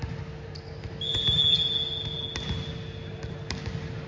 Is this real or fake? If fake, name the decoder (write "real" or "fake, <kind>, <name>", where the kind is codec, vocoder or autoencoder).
real